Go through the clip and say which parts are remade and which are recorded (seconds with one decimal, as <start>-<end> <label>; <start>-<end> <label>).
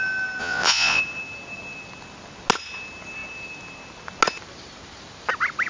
0.0-0.4 recorded; 0.4-1.0 remade; 1.0-5.7 recorded